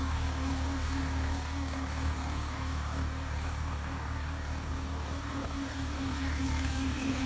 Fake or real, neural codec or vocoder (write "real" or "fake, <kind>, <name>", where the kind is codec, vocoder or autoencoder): fake, codec, DAC